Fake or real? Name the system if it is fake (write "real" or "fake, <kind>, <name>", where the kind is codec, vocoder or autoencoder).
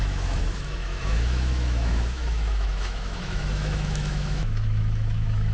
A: fake, autoencoder, DAC-VAE